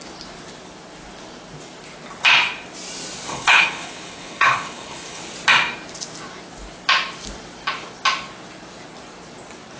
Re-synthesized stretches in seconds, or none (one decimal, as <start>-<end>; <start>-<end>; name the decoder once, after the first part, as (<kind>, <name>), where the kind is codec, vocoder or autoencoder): 3.3-5.2 (codec, HILCodec)